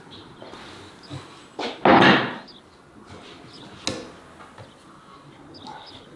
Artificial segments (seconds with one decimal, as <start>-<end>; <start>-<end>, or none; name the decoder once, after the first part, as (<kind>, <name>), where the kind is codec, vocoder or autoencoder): none